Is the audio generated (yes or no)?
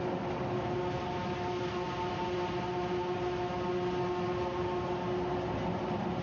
no